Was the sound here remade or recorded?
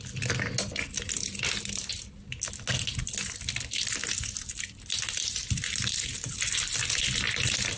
recorded